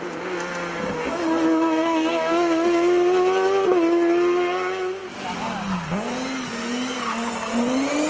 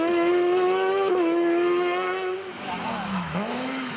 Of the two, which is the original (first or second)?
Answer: first